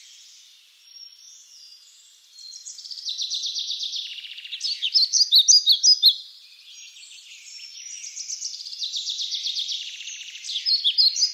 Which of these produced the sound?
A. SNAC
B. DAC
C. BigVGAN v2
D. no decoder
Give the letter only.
D